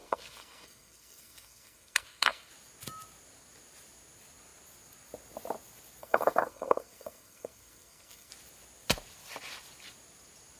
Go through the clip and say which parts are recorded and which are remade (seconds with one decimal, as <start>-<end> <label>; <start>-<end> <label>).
0.0-2.5 remade; 2.5-6.0 recorded; 6.0-8.3 remade; 8.3-10.6 recorded